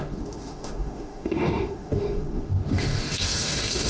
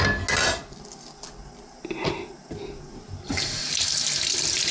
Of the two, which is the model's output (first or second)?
first